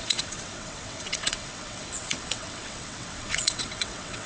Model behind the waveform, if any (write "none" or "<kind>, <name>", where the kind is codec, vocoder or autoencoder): vocoder, WaveNeXt